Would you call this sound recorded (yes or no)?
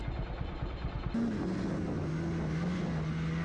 yes